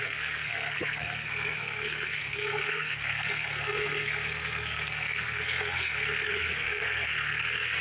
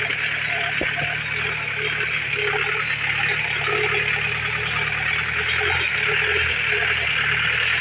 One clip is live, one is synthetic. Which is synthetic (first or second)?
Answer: first